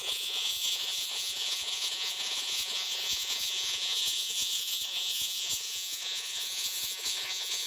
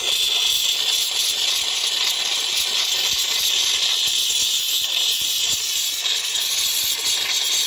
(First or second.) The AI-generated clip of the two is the first